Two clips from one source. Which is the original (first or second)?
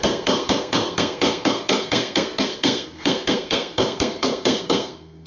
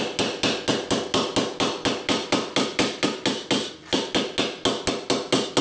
second